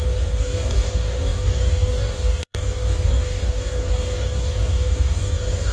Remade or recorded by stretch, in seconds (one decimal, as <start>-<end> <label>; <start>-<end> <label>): 0.0-5.7 remade